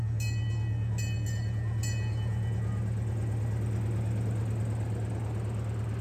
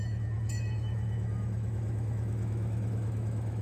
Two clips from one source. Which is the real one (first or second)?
first